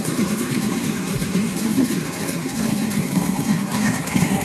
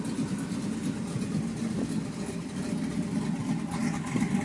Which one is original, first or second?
second